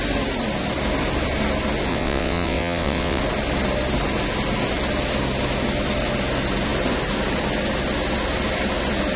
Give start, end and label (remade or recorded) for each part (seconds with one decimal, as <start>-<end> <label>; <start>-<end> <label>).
0.0-1.9 recorded; 1.9-3.2 remade; 3.2-9.2 recorded